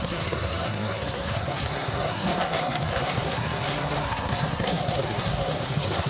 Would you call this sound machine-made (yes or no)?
yes